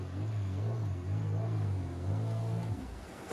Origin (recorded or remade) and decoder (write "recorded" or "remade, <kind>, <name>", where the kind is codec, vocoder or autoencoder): remade, codec, SNAC